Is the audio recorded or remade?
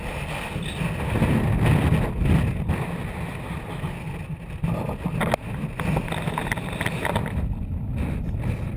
recorded